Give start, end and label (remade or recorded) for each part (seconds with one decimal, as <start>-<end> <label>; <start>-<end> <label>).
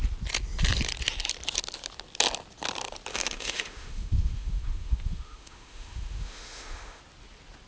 0.0-3.1 recorded; 3.1-7.0 remade; 7.0-7.7 recorded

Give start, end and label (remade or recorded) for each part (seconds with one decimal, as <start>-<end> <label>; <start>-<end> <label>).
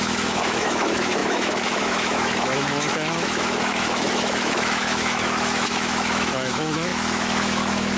0.0-8.0 remade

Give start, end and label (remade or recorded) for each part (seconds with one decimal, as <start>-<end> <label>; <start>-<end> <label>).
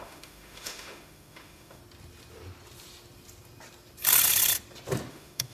0.0-1.8 remade; 1.8-5.1 recorded; 5.1-5.5 remade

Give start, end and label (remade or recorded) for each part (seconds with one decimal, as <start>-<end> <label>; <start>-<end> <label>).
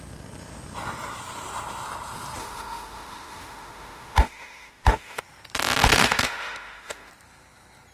0.0-2.4 recorded; 2.4-5.2 remade; 5.2-5.9 recorded; 5.9-7.1 remade; 7.1-7.9 recorded